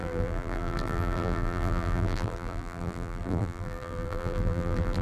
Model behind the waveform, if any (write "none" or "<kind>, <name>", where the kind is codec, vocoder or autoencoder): vocoder, BigVGAN v2